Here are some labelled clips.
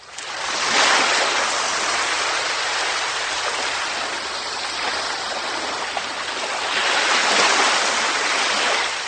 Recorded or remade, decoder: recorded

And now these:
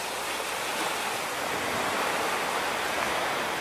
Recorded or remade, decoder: recorded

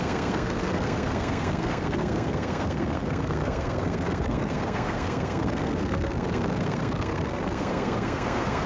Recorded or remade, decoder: remade, codec, SNAC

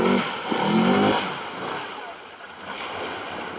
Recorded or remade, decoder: recorded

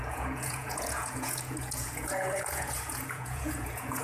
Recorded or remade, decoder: remade, vocoder, Vocos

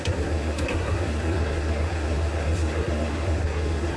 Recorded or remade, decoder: remade, codec, SNAC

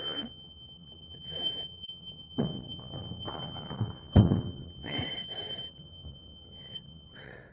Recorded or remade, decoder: remade, vocoder, WaveNeXt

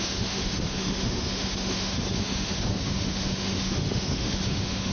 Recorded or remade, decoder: remade, autoencoder, DAC-VAE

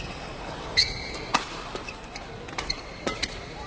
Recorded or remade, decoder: remade, vocoder, BigVGAN v2